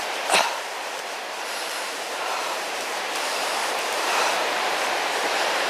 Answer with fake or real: fake